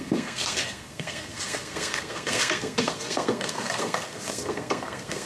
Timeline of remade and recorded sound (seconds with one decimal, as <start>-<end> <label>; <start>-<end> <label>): 0.0-5.3 remade